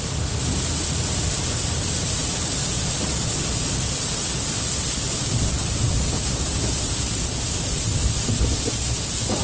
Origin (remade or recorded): remade